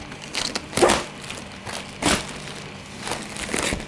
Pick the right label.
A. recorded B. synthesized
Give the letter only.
A